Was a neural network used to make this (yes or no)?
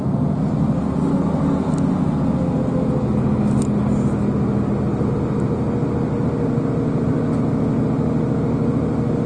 no